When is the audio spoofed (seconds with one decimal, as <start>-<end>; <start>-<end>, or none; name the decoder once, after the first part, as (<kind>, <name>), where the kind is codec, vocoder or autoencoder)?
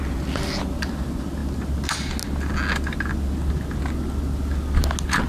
none